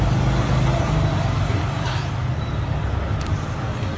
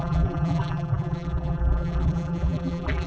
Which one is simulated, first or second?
second